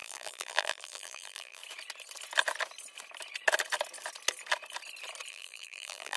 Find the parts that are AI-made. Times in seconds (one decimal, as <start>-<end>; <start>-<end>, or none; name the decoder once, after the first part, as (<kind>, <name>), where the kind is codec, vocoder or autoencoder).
0.0-1.6 (vocoder, BigVGAN v2); 5.3-6.2